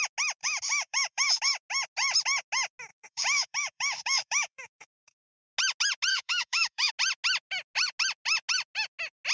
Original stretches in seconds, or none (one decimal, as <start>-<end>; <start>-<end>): 0.0-0.4; 1.4-2.9; 5.2-6.1; 6.9-9.3